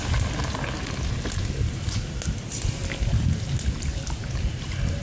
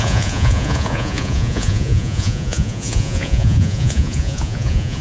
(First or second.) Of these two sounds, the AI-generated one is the second